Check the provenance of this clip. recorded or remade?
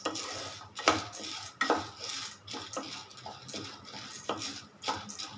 recorded